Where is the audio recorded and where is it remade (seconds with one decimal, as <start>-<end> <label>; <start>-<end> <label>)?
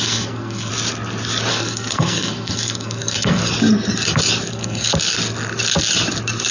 0.0-0.7 remade; 0.7-1.5 recorded; 1.5-3.4 remade; 3.4-4.5 recorded; 4.5-4.9 remade; 4.9-6.5 recorded